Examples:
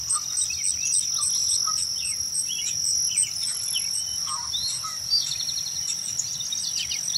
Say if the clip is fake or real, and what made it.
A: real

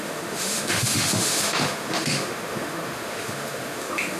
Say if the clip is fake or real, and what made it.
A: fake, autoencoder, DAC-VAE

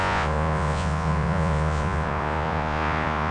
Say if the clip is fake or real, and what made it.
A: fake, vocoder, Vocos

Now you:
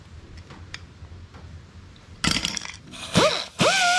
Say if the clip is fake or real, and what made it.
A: real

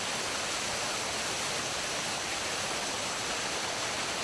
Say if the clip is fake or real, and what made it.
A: real